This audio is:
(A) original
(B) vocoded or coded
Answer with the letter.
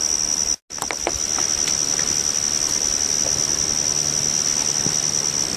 A